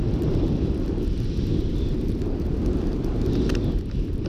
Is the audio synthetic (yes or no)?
no